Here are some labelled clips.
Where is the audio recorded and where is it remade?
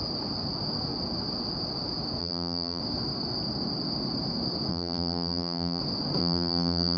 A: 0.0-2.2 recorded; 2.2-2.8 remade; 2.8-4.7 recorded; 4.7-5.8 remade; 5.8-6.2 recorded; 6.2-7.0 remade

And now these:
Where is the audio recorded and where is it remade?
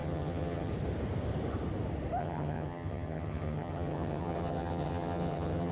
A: 0.0-0.7 remade; 0.7-2.2 recorded; 2.2-5.7 remade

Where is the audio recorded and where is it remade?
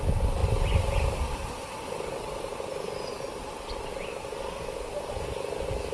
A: 0.0-5.9 recorded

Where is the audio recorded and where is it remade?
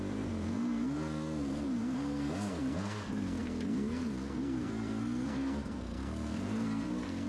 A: 0.0-7.3 remade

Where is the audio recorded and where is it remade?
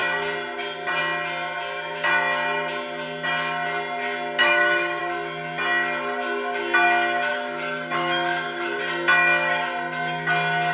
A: 0.0-4.4 recorded; 4.4-5.0 remade; 5.0-7.3 recorded; 7.3-8.8 remade; 8.8-10.7 recorded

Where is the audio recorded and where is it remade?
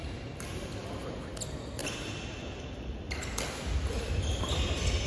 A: 0.0-5.1 recorded